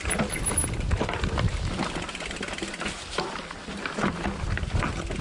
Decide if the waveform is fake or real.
real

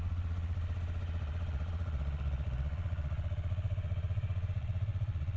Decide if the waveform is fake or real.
fake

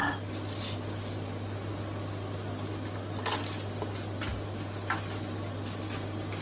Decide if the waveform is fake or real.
real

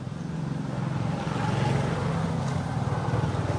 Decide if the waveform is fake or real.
real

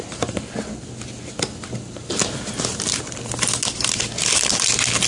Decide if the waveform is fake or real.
real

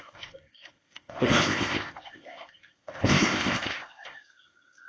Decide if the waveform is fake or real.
fake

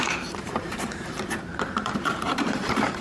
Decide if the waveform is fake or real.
fake